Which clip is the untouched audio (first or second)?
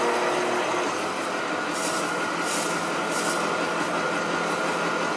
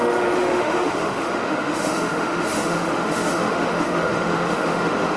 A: first